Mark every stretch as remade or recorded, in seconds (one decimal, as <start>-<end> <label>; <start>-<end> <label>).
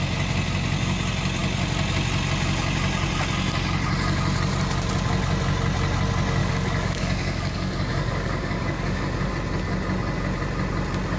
0.0-6.4 recorded; 6.4-9.3 remade; 9.3-11.2 recorded